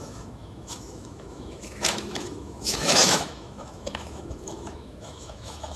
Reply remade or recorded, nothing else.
remade